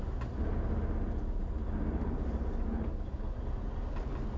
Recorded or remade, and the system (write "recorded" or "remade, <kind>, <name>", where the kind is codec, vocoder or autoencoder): recorded